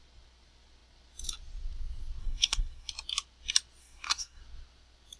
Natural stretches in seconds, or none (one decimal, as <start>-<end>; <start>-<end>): 0.0-2.2; 2.9-3.8; 4.4-5.2